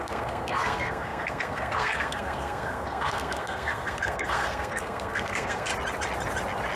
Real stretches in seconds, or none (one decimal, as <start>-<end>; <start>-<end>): 5.7-6.8